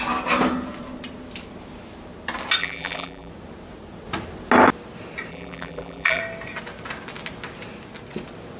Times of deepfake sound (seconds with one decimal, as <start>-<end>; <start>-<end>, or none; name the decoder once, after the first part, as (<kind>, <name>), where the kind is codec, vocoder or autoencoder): 2.6-3.3 (vocoder, BigVGAN v2); 5.3-6.2